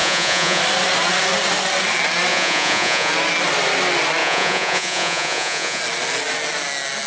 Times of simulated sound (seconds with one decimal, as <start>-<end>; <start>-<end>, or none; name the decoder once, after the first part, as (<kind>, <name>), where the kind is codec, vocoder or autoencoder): 0.0-0.6 (vocoder, Vocos); 2.3-3.1; 4.2-5.8